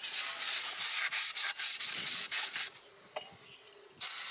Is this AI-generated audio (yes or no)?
no